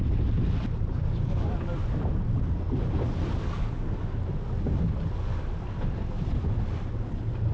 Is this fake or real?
real